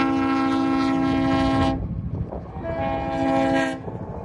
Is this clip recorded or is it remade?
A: recorded